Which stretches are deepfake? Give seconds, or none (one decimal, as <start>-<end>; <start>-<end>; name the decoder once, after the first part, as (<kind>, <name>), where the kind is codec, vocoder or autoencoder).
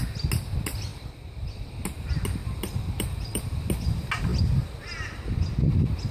0.9-1.7 (vocoder, BigVGAN v2); 2.4-3.4